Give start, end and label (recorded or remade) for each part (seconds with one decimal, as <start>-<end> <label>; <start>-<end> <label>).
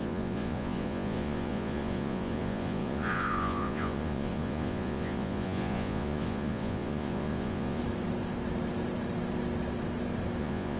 0.0-7.8 remade; 7.8-10.4 recorded; 10.4-10.8 remade